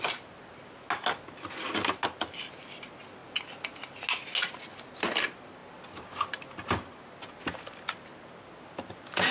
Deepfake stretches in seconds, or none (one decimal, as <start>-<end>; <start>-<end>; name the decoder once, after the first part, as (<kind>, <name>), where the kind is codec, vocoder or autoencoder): none